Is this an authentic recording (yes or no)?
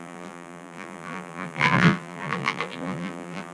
no